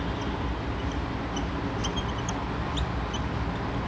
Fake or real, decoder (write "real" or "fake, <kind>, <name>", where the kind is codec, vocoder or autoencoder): real